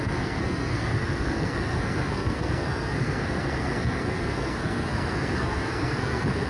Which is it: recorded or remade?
remade